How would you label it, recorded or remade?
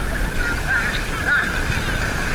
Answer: recorded